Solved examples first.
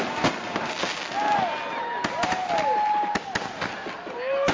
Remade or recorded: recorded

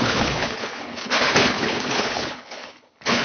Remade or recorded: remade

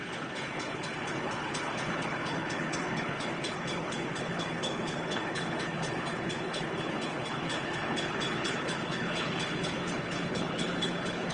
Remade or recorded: remade